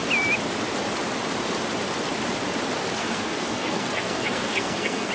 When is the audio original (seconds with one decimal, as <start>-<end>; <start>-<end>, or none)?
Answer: 0.0-3.0